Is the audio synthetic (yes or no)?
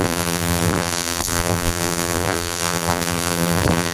yes